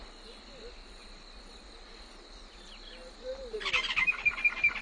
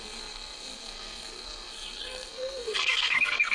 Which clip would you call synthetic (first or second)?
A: second